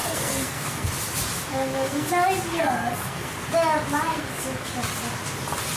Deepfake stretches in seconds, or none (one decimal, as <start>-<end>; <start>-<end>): 0.0-0.9; 1.5-2.1; 2.5-3.3; 4.1-4.7